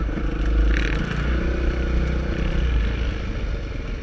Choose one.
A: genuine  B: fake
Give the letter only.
A